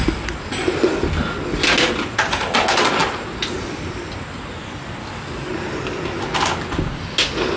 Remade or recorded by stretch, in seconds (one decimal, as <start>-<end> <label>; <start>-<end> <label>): 0.0-5.0 recorded; 5.0-5.5 remade; 5.5-7.6 recorded